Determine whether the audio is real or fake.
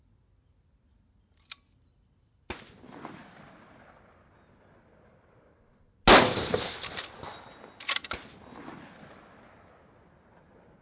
real